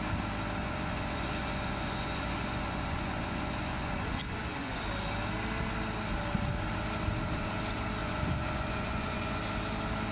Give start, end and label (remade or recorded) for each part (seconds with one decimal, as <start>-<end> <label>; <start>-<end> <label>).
0.0-0.6 recorded; 0.6-4.8 remade; 4.8-8.0 recorded; 8.0-9.4 remade; 9.4-10.1 recorded